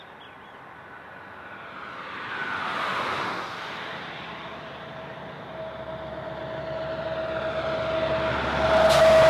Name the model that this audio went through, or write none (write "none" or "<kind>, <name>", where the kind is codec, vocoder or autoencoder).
none